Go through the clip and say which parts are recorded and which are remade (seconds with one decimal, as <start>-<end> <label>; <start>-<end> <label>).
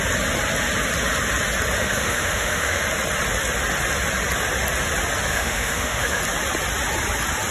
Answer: 0.0-1.8 recorded; 1.8-2.8 remade; 2.8-5.3 recorded; 5.3-6.2 remade; 6.2-7.5 recorded